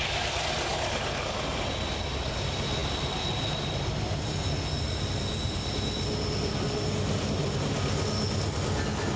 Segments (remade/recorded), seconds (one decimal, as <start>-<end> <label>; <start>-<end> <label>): 0.0-9.2 recorded